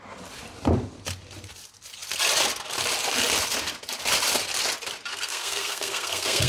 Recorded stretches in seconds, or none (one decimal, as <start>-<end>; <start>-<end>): 0.0-5.1